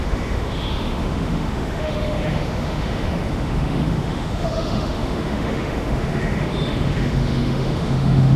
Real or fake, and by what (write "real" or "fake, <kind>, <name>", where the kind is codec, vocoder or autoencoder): fake, autoencoder, DAC-VAE